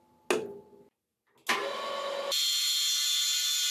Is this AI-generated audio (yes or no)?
no